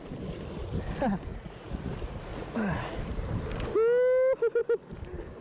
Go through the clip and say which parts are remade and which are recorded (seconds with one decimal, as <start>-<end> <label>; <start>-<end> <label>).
0.0-1.3 recorded; 1.3-1.9 remade; 1.9-2.3 recorded; 2.3-3.0 remade; 3.0-5.4 recorded